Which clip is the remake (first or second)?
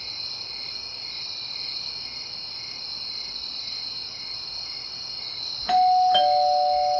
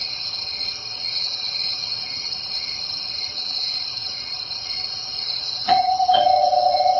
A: second